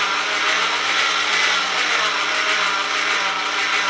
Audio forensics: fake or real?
real